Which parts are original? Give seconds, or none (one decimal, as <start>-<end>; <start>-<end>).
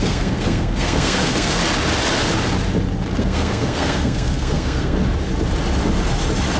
1.6-3.2; 5.0-6.6